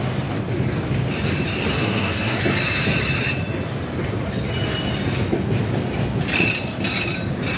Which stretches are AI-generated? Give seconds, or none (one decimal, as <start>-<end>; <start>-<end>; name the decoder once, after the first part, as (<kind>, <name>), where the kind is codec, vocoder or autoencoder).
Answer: 1.8-2.4 (codec, SNAC)